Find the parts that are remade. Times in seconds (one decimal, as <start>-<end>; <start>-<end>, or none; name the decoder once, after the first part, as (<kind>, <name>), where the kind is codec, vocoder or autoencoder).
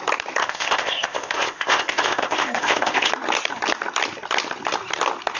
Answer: 0.4-3.1 (codec, ZipCodec)